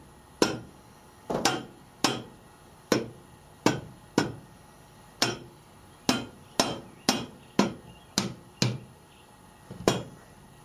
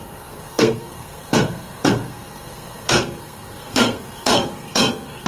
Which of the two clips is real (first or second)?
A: first